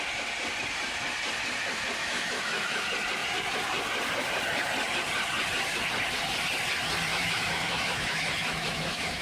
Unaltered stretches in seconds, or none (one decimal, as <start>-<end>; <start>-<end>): 0.0-2.0; 2.8-7.1